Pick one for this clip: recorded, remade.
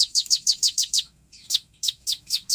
remade